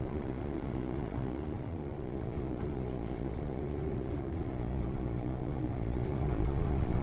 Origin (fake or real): fake